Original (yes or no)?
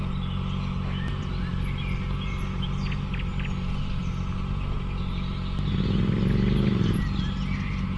yes